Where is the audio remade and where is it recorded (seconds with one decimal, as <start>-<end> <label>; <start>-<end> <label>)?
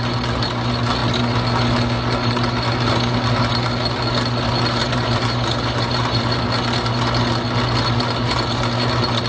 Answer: 0.0-4.8 recorded; 4.8-6.2 remade; 6.2-9.3 recorded